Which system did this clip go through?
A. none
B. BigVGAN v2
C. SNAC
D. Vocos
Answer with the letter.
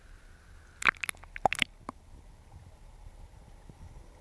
A